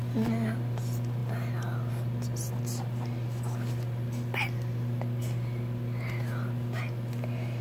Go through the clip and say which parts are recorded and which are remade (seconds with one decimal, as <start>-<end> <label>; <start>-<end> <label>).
0.0-7.6 recorded